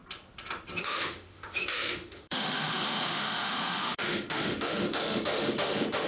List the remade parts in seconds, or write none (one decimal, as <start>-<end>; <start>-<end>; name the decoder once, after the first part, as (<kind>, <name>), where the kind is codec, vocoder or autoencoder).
0.8-6.1 (autoencoder, DAC-VAE)